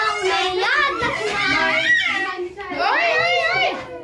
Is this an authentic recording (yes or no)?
yes